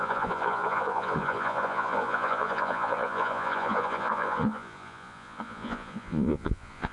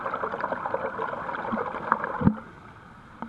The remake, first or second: first